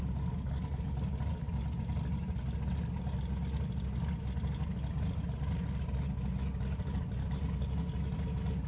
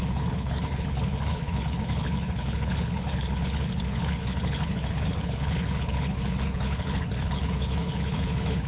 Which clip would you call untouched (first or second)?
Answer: first